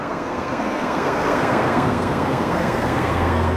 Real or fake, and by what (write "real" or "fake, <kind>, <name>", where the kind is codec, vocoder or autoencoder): fake, codec, SNAC